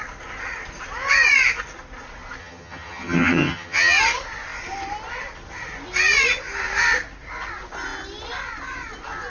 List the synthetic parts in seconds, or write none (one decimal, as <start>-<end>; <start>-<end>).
2.4-4.0